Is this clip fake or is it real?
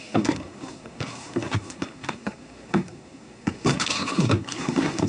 fake